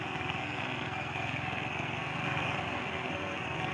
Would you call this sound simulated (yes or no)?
yes